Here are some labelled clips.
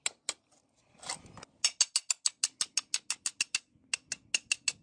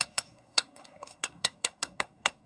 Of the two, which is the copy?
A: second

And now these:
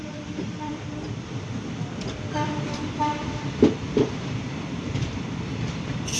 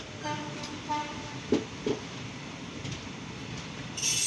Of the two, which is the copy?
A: first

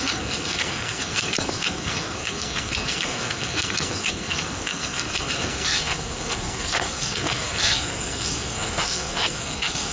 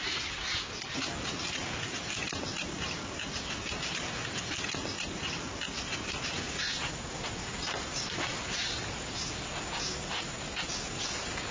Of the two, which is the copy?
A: first